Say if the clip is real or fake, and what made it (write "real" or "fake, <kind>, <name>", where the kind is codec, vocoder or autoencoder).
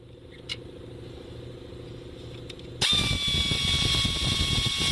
real